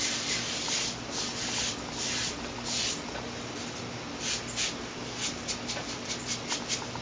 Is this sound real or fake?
real